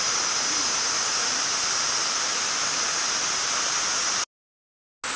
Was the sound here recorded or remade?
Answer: recorded